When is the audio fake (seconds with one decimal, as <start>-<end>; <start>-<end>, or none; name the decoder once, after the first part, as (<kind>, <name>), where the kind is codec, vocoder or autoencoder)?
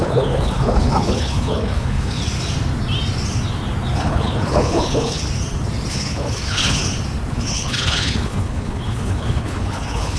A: 0.0-2.2 (codec, HILCodec); 4.0-5.2; 5.9-6.8; 7.3-10.2